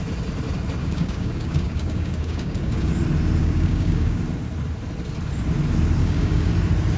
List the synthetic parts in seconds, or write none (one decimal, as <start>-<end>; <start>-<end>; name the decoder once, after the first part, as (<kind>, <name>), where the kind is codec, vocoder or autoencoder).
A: 0.8-2.9 (codec, DAC); 3.4-4.2; 6.0-6.5